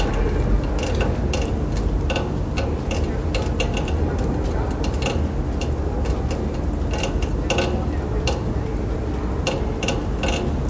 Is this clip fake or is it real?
real